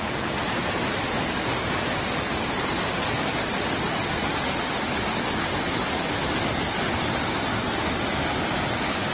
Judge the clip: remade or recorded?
recorded